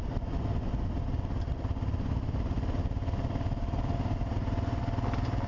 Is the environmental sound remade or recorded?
recorded